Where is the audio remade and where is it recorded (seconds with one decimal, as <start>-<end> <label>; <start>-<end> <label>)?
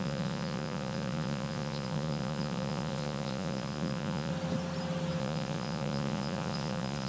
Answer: 0.0-4.3 remade; 4.3-5.2 recorded; 5.2-7.1 remade